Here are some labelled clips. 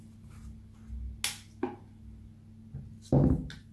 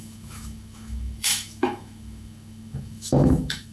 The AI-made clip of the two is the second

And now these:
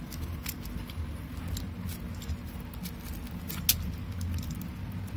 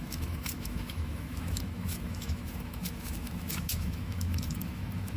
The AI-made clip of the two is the second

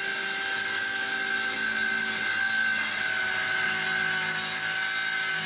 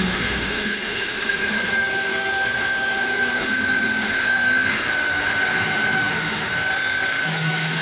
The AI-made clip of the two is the second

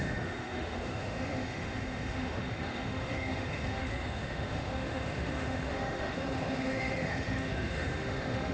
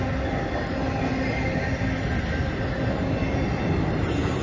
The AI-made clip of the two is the first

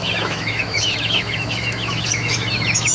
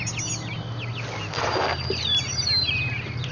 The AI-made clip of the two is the first